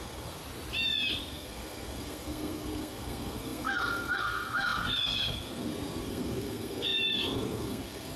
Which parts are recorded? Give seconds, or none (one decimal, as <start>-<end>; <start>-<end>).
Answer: 0.4-1.2